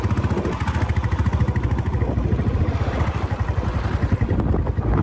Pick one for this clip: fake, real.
real